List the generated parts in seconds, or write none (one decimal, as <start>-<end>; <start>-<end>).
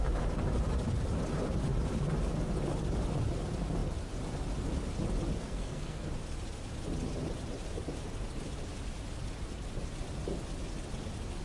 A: 5.4-6.1